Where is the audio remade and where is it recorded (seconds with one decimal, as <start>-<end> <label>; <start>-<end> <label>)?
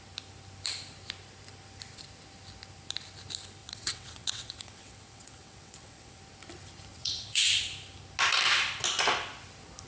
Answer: 0.0-3.6 recorded; 3.6-6.2 remade; 6.2-6.9 recorded; 6.9-7.5 remade; 7.5-9.9 recorded